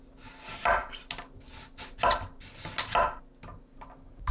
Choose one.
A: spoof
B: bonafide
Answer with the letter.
B